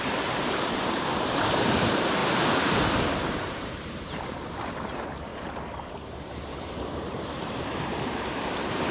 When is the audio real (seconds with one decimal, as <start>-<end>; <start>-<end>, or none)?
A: 2.2-2.9